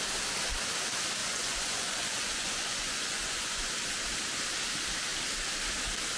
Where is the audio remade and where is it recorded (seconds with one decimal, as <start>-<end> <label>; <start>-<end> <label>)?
0.0-1.2 recorded; 1.2-3.7 remade; 3.7-6.2 recorded